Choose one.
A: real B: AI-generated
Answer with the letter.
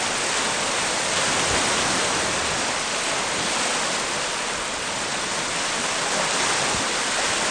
A